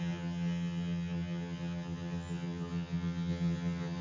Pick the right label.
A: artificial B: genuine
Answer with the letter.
A